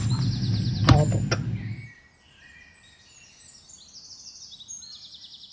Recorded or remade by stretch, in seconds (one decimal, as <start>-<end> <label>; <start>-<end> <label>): 0.0-5.5 recorded